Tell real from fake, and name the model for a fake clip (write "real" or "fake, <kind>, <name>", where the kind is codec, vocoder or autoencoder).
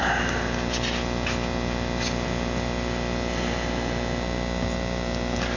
real